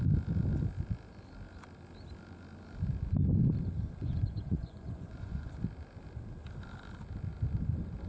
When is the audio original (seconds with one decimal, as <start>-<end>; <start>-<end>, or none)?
0.0-4.0; 5.5-8.1